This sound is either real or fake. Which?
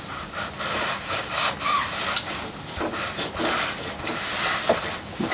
real